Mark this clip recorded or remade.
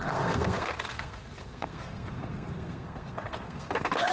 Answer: remade